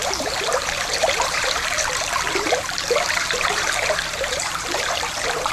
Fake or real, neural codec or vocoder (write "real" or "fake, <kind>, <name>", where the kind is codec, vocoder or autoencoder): fake, vocoder, BigVGAN v2